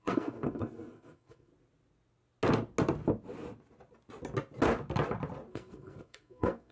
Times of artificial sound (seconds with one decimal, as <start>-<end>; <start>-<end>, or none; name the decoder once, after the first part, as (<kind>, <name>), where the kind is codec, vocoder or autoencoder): 0.0-1.5 (codec, SNAC); 5.5-6.7